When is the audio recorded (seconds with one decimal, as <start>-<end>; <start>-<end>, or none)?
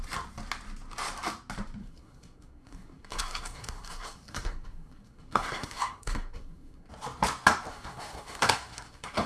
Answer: 0.0-1.8; 6.9-7.7